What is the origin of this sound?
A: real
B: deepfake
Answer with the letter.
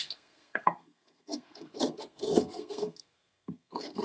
B